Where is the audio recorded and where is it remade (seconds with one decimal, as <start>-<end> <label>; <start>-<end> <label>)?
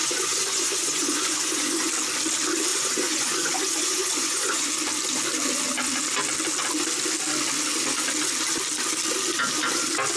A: 0.0-1.9 remade; 1.9-2.7 recorded; 2.7-4.7 remade; 4.7-10.2 recorded